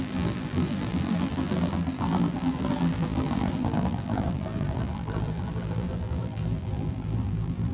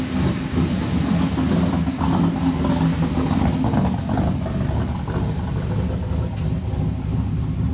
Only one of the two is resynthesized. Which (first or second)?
first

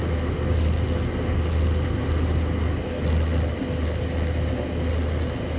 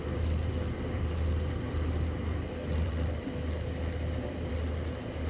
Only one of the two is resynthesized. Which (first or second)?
second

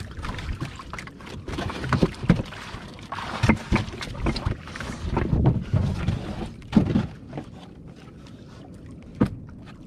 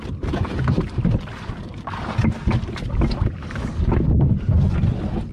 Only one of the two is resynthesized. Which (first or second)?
first